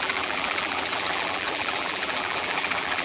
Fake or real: fake